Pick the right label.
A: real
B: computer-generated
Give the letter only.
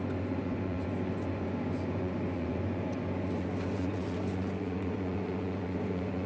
B